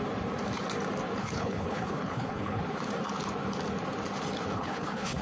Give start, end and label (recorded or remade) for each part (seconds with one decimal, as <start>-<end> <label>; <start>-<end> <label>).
0.0-1.2 recorded; 1.2-2.6 remade; 2.6-4.5 recorded; 4.5-5.2 remade